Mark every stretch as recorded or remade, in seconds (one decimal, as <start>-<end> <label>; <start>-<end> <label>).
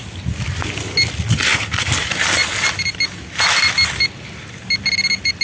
0.0-5.4 recorded